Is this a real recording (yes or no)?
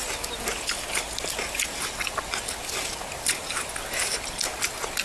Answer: yes